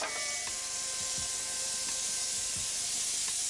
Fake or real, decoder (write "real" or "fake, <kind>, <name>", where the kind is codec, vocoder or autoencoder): real